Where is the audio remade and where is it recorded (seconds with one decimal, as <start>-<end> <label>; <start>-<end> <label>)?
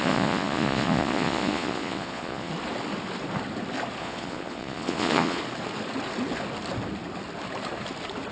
0.0-2.5 remade; 2.5-4.0 recorded; 4.0-5.4 remade; 5.4-8.3 recorded